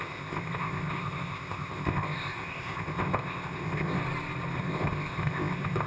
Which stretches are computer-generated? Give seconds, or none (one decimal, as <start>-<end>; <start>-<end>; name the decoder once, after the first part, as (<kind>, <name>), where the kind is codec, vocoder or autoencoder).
0.0-4.0 (codec, ZipCodec); 4.6-5.9